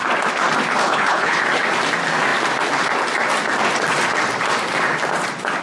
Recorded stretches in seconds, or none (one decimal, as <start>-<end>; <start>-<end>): 0.0-0.8; 1.4-5.6